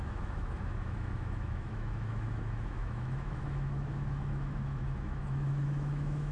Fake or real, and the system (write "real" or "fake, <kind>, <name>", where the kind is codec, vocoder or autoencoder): fake, autoencoder, DAC-VAE